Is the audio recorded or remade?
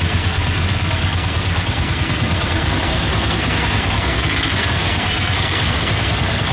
remade